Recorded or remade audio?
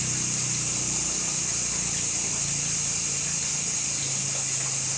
recorded